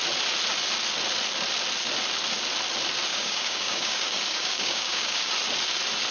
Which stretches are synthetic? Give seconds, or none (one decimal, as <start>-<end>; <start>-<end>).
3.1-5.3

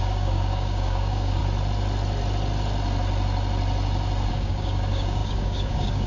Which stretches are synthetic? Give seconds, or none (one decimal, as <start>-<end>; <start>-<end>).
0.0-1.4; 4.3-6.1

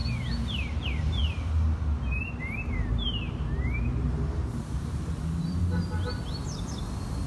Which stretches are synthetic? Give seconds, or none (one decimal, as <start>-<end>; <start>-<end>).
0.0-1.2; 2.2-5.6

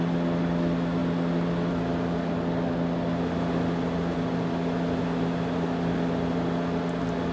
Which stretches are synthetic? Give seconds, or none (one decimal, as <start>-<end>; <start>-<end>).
none

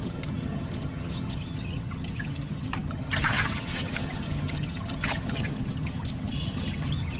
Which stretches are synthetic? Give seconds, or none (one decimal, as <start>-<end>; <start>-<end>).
0.0-7.2

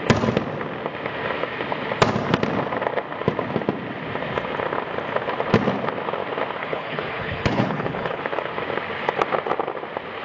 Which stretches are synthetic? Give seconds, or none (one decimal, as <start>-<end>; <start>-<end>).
6.6-8.2

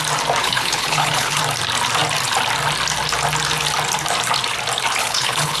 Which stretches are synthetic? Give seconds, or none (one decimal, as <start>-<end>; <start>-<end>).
0.4-1.4; 5.0-5.6